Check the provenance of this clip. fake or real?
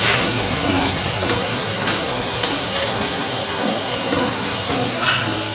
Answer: fake